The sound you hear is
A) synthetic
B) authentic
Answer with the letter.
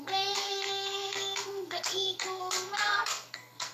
A